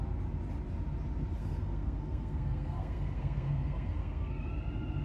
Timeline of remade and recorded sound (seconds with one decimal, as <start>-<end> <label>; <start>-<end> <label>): 0.0-1.4 recorded; 1.4-4.4 remade; 4.4-5.0 recorded